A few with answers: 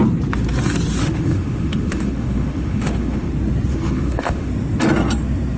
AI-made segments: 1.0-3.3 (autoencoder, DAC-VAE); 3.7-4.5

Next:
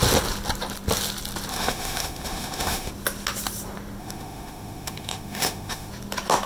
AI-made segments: 1.5-2.9 (autoencoder, DAC-VAE); 4.0-5.9

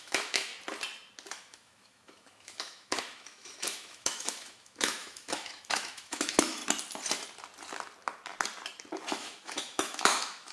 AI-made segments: 0.0-0.5 (autoencoder, DAC-VAE); 1.3-6.6; 9.1-10.5

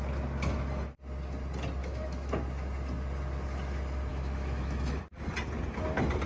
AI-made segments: 1.8-2.3 (autoencoder, DAC-VAE); 4.1-5.0

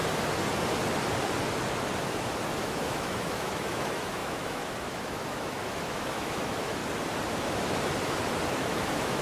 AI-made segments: 2.6-6.8 (autoencoder, DAC-VAE); 8.5-9.2